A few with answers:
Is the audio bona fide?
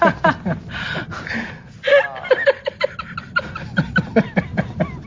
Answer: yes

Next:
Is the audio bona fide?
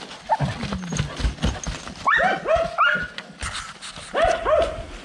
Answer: yes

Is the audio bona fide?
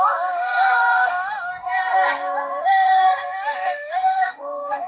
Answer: no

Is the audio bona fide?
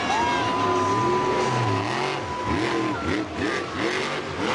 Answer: yes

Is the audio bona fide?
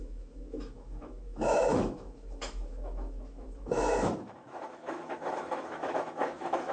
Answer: no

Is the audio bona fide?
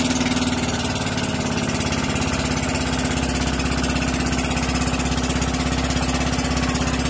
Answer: yes